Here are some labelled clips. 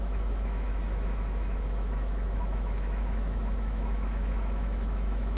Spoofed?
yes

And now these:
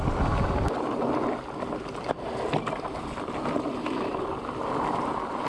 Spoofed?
no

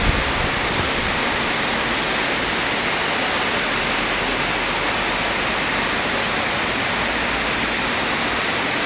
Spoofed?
no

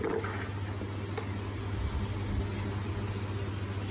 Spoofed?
no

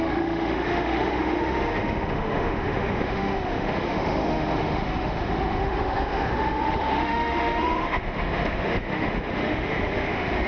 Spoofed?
yes